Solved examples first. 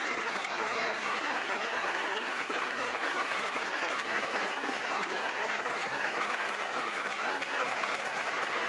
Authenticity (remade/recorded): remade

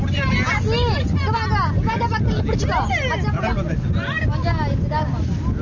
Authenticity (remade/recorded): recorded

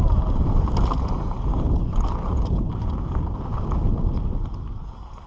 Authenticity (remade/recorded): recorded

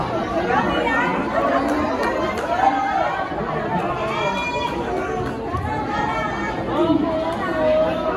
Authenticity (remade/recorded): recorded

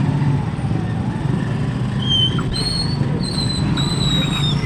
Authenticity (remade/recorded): recorded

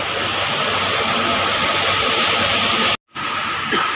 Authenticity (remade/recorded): recorded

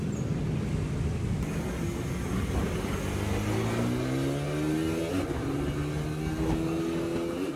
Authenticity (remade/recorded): recorded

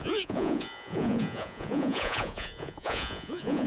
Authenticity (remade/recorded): remade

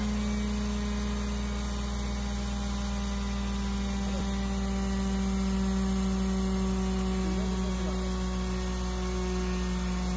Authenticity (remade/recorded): recorded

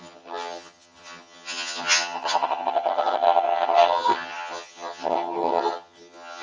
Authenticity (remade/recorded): remade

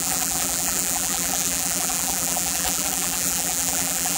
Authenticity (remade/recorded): remade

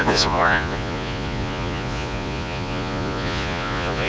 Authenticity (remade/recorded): remade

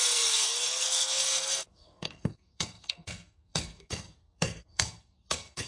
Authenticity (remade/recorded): remade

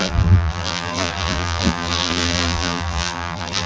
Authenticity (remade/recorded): remade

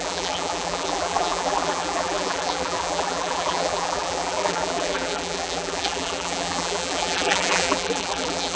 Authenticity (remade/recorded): remade